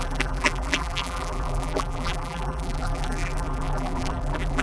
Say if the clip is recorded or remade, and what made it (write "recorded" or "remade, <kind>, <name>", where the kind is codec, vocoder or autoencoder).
remade, vocoder, BigVGAN v2